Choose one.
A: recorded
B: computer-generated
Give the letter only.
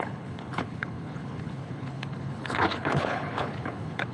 B